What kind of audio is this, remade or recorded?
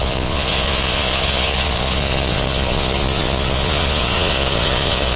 remade